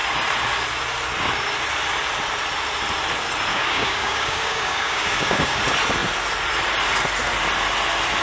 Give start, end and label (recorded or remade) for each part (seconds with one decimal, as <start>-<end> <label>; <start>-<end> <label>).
0.0-3.5 recorded; 3.5-5.6 remade; 5.6-8.2 recorded